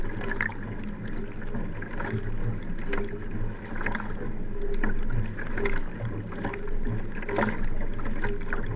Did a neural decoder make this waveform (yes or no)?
no